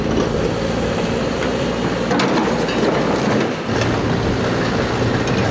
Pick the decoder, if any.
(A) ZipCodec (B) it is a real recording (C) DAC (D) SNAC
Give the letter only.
B